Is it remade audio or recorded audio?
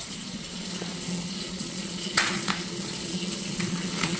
remade